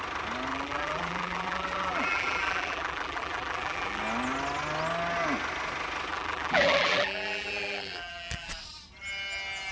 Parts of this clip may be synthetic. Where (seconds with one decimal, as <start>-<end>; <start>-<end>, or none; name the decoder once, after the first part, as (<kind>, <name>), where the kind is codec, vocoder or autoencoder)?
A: 0.5-4.0 (vocoder, BigVGAN v2); 6.1-8.5